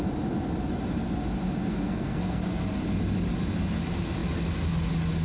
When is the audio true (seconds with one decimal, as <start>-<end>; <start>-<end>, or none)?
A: 0.0-1.7; 2.4-5.2